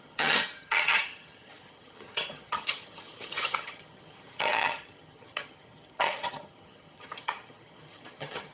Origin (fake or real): fake